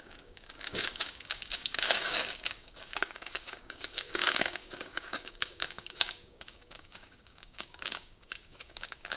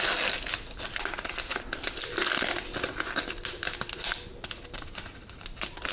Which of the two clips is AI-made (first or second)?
first